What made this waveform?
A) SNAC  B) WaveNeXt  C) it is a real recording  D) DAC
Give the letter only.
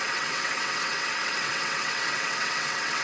B